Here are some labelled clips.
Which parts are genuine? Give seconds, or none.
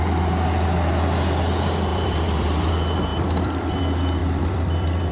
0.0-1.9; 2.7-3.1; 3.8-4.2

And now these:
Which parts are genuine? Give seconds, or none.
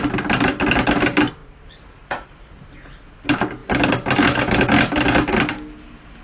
0.0-6.2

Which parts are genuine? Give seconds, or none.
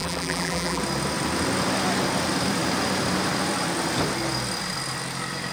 0.8-5.5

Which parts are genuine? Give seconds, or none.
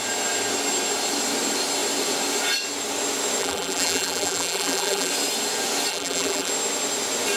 0.0-3.4; 5.1-5.9; 6.5-7.4